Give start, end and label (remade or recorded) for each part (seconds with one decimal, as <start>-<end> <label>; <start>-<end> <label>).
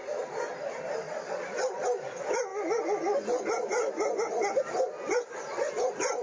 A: 0.0-6.2 recorded